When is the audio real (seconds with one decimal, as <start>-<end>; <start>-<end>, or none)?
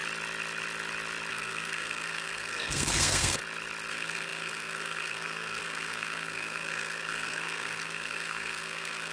0.0-1.3; 3.4-3.9